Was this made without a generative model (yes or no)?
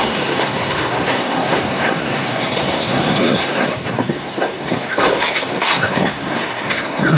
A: no